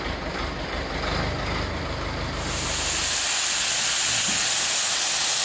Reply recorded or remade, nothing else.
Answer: recorded